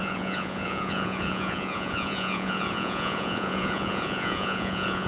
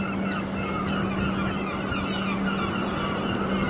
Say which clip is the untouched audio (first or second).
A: second